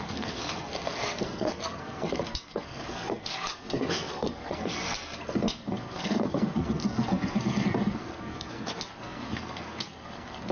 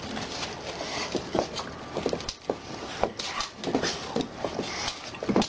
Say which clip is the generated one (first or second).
first